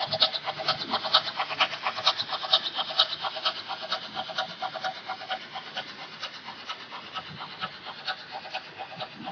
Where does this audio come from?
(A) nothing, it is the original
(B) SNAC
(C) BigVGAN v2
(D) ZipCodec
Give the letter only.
A